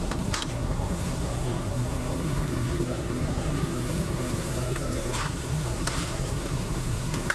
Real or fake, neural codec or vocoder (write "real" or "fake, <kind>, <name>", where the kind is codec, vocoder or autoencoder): fake, codec, SNAC